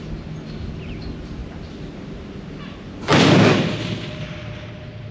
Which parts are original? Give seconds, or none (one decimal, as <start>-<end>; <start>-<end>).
0.0-5.1